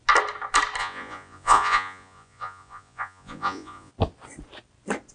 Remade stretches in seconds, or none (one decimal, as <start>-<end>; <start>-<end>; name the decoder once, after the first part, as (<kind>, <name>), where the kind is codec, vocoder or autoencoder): 0.8-3.9 (vocoder, Vocos)